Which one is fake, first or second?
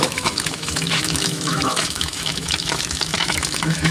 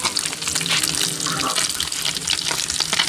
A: first